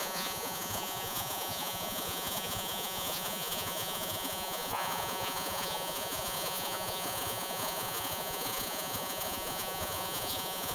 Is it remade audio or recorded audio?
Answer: remade